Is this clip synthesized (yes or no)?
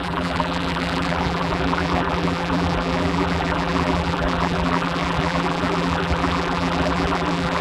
yes